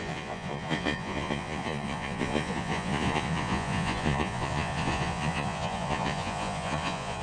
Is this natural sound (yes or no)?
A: no